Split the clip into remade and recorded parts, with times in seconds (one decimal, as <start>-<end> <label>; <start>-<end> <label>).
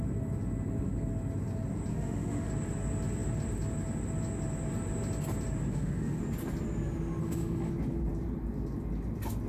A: 0.0-1.9 recorded; 1.9-2.5 remade; 2.5-5.7 recorded; 5.7-6.2 remade; 6.2-7.2 recorded; 7.2-7.7 remade; 7.7-9.5 recorded